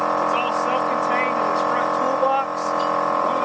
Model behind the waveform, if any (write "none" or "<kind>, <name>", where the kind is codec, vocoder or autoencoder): none